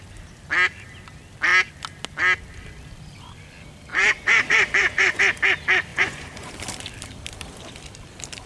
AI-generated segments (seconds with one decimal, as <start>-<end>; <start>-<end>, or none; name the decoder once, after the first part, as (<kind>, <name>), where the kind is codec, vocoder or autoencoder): 3.9-5.2 (vocoder, Vocos); 5.9-6.5